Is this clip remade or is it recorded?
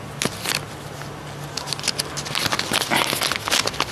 recorded